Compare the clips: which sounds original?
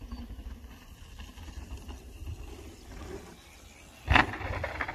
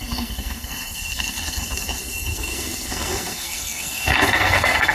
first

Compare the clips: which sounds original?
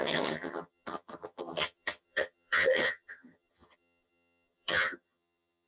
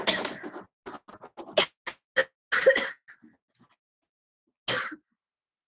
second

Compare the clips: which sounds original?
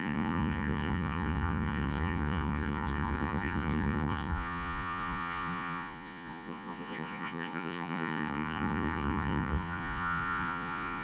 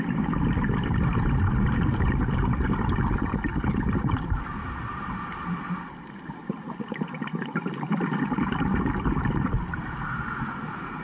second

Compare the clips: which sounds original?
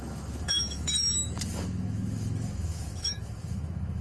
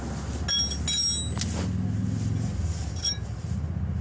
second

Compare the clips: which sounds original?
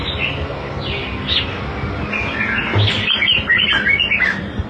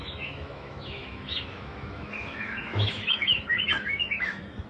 first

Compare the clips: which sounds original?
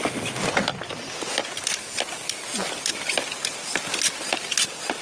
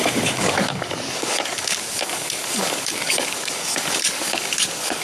first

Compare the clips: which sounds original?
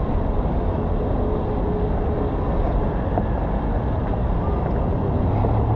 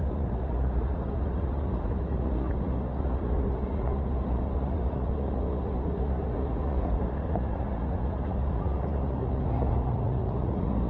first